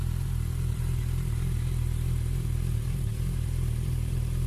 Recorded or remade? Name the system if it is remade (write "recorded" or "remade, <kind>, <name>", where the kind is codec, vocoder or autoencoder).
remade, vocoder, BigVGAN v2